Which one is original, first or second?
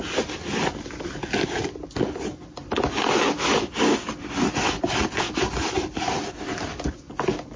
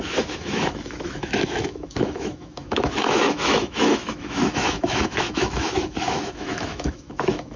first